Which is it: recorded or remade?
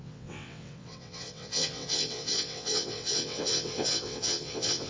remade